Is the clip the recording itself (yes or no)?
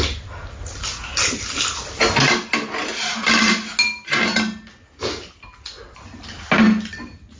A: yes